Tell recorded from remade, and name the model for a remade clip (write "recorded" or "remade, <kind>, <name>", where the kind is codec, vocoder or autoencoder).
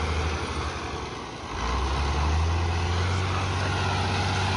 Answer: recorded